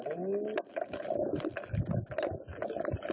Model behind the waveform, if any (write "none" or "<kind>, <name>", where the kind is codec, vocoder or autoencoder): none